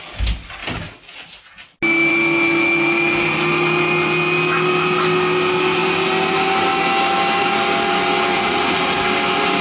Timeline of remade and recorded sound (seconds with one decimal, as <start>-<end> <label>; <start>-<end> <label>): 0.0-8.3 recorded; 8.3-9.0 remade; 9.0-9.6 recorded